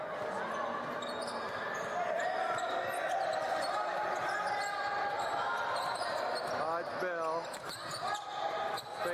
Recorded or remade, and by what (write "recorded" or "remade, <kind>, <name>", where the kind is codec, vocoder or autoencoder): recorded